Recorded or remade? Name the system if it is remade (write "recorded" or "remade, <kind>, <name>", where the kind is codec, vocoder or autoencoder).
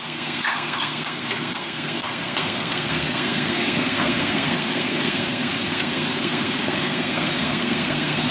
remade, codec, SNAC